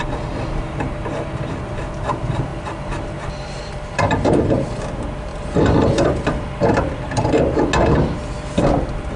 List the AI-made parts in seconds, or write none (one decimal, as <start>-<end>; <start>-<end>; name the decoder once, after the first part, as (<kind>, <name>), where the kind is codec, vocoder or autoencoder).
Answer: 2.5-4.8 (vocoder, BigVGAN v2); 5.3-7.3

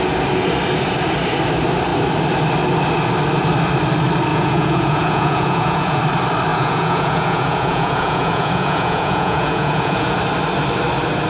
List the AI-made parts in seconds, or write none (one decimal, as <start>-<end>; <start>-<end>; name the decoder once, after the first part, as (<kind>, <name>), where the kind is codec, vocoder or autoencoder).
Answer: 4.3-6.0 (vocoder, Vocos); 6.5-10.2

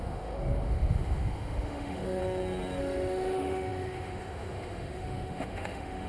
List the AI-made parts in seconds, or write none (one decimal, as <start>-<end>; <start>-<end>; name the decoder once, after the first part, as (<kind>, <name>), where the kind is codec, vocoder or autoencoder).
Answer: 0.0-2.2 (autoencoder, DAC-VAE); 2.8-6.1

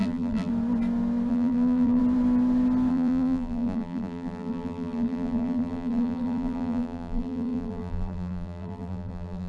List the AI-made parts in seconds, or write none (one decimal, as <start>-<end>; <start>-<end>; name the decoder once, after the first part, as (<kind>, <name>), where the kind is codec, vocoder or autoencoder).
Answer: 0.0-0.5 (vocoder, BigVGAN v2); 1.3-2.0; 2.9-9.5